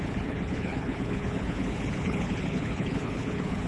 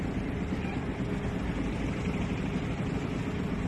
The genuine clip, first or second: second